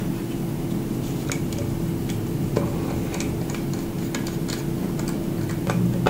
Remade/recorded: recorded